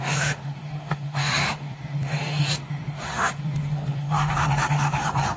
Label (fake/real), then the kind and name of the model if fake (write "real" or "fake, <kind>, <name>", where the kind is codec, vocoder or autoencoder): fake, autoencoder, DAC-VAE